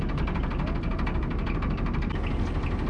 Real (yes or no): yes